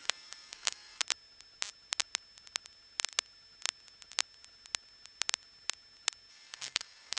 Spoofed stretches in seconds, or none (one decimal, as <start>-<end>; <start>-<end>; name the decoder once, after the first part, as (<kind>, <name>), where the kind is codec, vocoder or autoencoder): 0.0-1.0 (codec, SNAC); 6.3-7.2